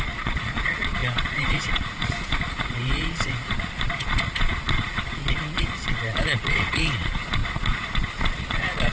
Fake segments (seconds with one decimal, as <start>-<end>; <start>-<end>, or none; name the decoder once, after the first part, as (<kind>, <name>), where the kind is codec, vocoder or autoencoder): 0.0-8.9 (vocoder, Vocos)